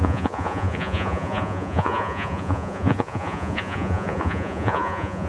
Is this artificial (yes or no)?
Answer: yes